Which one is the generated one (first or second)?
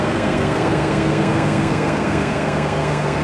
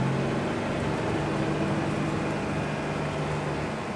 first